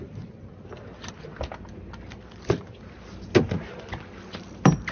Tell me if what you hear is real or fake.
real